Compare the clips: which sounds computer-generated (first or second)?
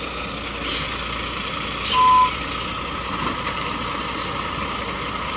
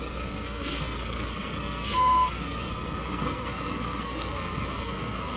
second